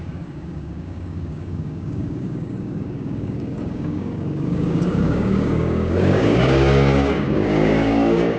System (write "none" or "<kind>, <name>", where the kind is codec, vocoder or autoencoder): codec, DAC